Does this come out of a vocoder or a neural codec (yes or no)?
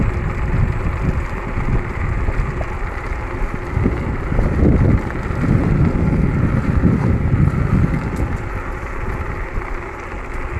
no